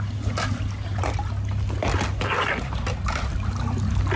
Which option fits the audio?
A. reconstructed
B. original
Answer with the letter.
B